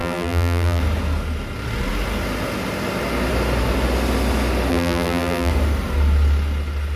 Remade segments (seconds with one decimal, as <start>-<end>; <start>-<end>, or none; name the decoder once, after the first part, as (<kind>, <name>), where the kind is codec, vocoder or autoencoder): 0.0-0.8 (vocoder, BigVGAN v2); 4.7-5.5